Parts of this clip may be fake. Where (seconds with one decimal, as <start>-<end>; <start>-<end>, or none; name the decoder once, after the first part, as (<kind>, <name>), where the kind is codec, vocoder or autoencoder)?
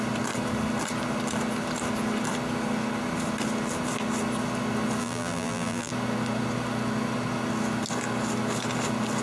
5.0-5.9 (vocoder, BigVGAN v2)